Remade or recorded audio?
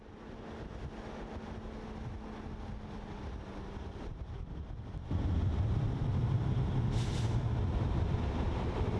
recorded